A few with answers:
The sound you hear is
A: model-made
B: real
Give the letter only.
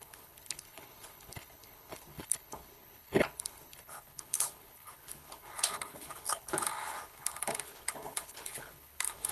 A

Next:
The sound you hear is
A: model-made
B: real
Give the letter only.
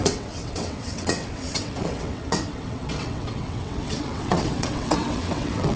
A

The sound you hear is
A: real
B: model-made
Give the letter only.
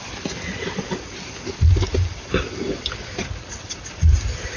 A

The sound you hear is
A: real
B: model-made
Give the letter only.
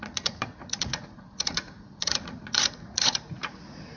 B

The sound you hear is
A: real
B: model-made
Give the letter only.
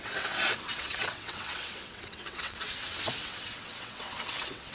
B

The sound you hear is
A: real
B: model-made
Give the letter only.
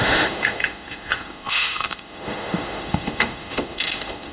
B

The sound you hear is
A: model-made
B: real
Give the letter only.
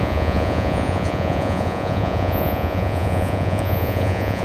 A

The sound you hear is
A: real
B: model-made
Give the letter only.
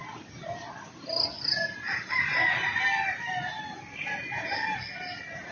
A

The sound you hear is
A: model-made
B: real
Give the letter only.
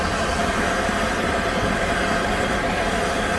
B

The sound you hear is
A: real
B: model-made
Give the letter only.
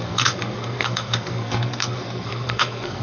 B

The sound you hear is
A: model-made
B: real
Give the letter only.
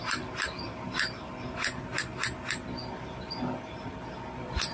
B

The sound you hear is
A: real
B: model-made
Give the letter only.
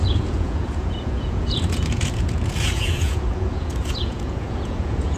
B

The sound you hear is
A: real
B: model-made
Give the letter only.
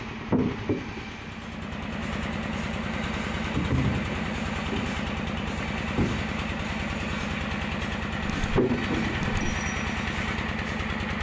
A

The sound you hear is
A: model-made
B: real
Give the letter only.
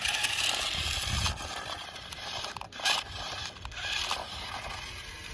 B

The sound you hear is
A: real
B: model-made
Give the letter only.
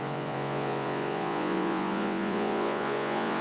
B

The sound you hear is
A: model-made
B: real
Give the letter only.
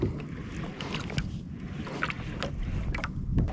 B